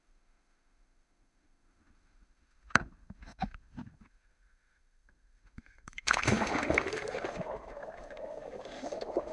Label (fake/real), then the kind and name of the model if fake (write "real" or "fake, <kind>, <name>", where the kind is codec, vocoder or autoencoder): fake, autoencoder, DAC-VAE